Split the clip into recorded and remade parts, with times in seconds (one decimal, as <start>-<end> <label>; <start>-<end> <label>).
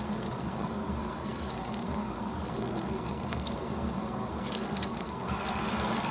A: 0.0-6.1 remade